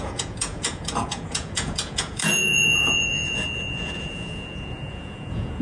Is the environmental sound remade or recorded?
remade